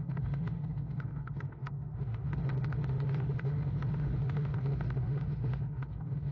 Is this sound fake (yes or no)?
yes